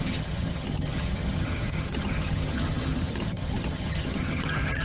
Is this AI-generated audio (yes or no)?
yes